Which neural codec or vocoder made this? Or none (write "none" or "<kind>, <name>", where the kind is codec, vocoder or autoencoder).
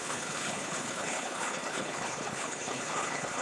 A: codec, HILCodec